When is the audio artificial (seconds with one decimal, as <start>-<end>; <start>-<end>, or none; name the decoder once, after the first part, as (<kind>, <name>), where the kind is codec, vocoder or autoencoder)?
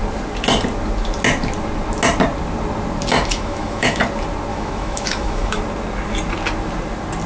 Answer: 3.3-4.0 (autoencoder, DAC-VAE); 4.5-5.6